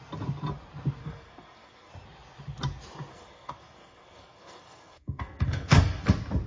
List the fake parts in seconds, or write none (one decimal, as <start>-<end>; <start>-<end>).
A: 1.0-1.9; 3.1-6.0